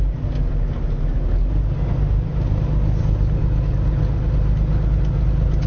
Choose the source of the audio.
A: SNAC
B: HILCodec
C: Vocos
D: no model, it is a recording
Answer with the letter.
D